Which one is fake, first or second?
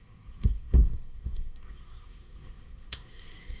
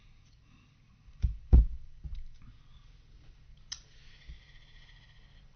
first